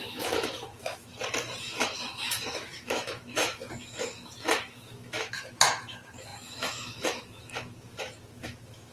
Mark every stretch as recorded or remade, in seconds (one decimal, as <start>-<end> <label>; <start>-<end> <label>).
0.0-1.1 remade; 1.1-1.6 recorded; 1.6-8.9 remade